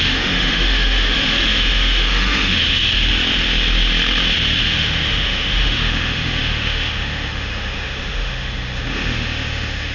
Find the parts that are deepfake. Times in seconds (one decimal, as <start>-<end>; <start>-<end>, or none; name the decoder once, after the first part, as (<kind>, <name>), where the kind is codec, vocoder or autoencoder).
0.0-2.9 (autoencoder, DAC-VAE); 4.6-9.9